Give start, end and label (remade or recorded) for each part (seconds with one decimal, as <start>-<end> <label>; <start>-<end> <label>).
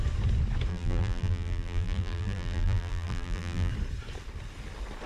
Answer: 0.0-0.7 recorded; 0.7-3.7 remade; 3.7-5.1 recorded